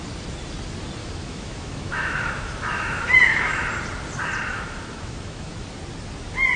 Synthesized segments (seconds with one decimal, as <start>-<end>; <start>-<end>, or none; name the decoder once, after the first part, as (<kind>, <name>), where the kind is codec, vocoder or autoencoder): 1.0-3.7 (autoencoder, DAC-VAE); 4.5-5.5